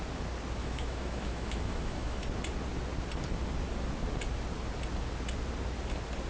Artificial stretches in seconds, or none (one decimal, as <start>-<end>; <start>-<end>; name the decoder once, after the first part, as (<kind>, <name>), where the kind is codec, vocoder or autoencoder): 0.6-2.2 (autoencoder, DAC-VAE)